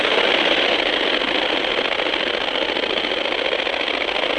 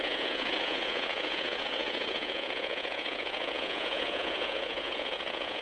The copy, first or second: second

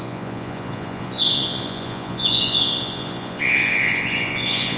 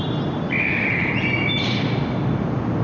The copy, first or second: first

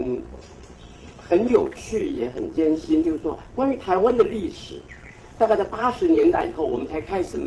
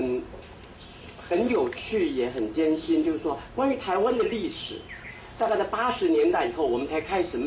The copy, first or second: first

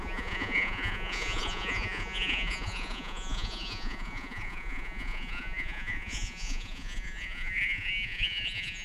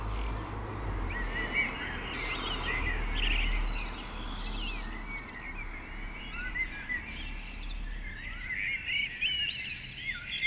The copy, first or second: first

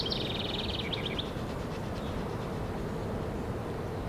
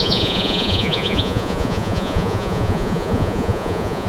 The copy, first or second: second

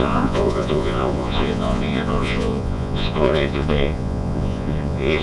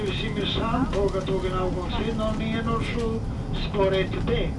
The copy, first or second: first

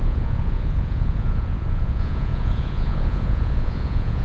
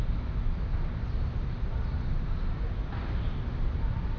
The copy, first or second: first